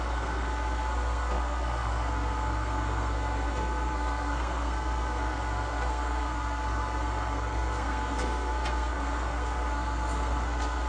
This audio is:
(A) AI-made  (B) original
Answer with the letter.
A